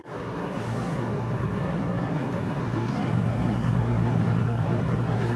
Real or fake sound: fake